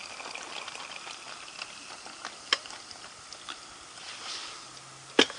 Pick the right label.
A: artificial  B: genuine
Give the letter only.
B